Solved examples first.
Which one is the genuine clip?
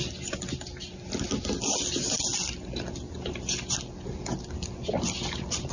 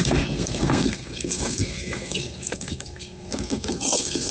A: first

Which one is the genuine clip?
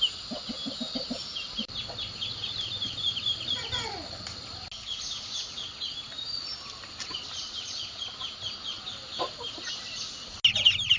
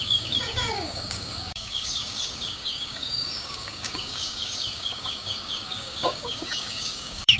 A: first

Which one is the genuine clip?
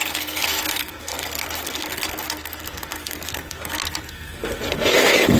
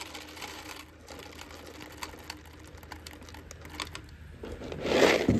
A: second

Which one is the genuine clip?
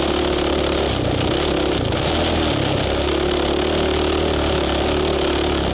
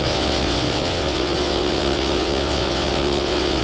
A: first